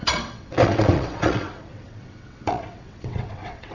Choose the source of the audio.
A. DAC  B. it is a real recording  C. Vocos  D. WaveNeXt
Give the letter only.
D